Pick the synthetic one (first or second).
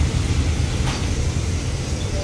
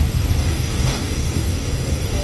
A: second